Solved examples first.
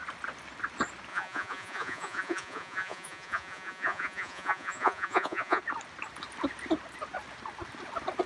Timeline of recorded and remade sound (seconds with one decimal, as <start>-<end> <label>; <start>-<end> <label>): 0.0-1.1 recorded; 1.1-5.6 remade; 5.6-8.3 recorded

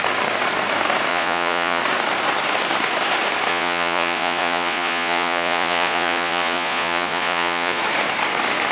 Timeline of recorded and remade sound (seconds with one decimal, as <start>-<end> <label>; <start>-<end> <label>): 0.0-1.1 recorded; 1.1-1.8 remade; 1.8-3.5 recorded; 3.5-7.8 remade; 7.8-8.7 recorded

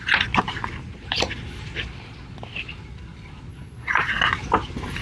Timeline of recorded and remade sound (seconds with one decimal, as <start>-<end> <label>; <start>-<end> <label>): 0.0-3.5 recorded; 3.5-4.2 remade; 4.2-5.0 recorded

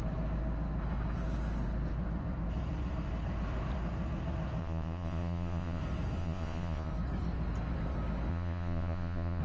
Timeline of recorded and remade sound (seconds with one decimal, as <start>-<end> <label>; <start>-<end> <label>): 0.0-4.6 recorded; 4.6-5.8 remade; 5.8-6.2 recorded; 6.2-6.9 remade; 6.9-8.3 recorded; 8.3-9.4 remade

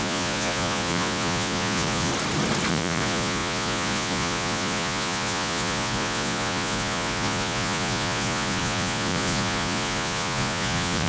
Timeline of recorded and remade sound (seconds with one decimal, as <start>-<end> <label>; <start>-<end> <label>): 0.0-2.1 remade; 2.1-2.7 recorded; 2.7-11.1 remade

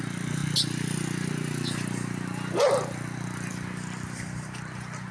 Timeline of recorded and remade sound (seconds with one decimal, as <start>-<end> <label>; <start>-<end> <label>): 0.0-5.1 recorded

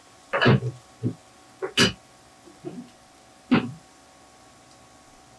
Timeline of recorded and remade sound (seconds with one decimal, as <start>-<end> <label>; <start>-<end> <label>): 0.0-0.6 remade; 0.6-5.4 recorded